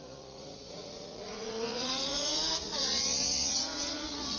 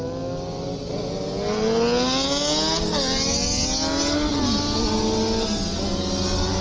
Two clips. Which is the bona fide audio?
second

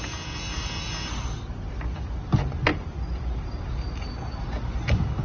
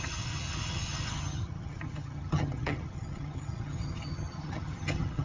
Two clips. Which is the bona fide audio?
first